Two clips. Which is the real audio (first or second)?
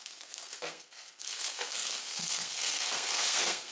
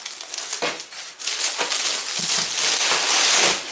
second